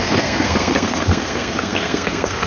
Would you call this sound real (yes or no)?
no